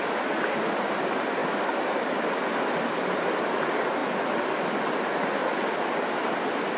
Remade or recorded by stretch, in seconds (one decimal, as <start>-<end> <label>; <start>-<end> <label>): 0.0-6.8 recorded